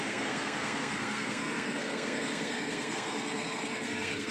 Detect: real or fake fake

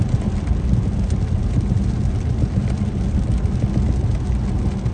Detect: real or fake real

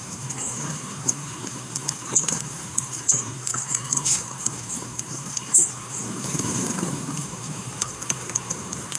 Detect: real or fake fake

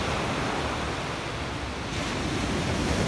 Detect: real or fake real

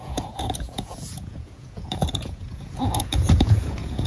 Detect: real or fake fake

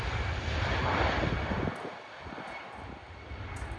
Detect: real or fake real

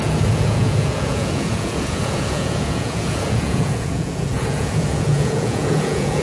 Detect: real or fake fake